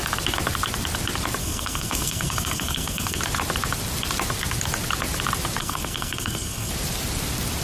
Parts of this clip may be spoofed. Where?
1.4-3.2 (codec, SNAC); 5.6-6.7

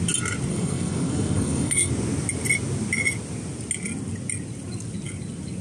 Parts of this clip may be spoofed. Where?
0.5-1.9 (codec, SNAC)

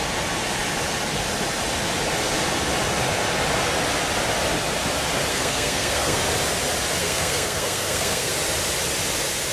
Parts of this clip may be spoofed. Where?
5.3-6.2 (codec, SNAC); 7.0-8.3

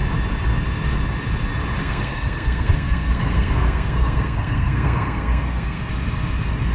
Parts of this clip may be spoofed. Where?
1.8-5.8 (codec, SNAC)